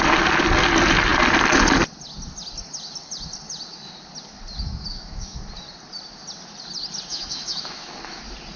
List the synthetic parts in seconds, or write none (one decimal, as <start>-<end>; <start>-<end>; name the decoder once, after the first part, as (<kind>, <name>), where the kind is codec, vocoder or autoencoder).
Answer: 4.9-5.4 (autoencoder, DAC-VAE); 7.1-8.2